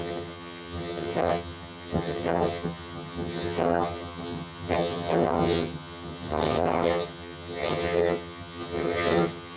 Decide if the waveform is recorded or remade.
remade